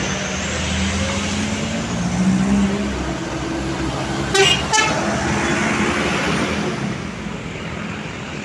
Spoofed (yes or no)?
no